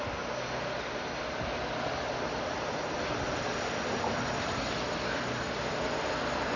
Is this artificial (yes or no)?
no